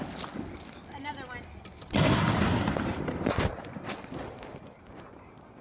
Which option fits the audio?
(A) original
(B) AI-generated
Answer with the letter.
A